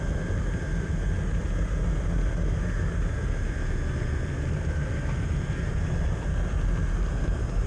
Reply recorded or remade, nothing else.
recorded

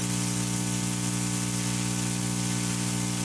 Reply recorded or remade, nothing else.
recorded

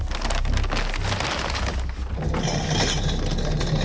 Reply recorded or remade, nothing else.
recorded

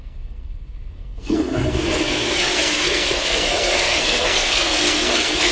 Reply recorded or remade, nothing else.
remade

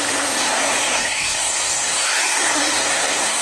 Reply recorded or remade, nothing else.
remade